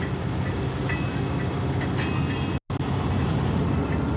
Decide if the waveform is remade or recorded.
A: recorded